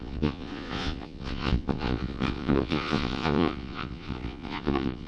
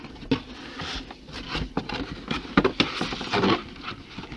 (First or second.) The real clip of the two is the second